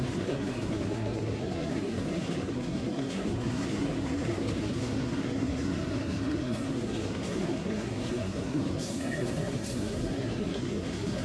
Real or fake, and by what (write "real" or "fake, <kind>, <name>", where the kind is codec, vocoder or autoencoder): fake, codec, SNAC